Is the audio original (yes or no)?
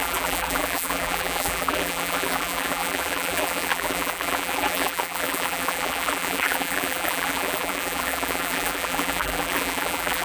no